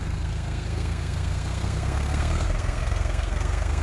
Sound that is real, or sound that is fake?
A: fake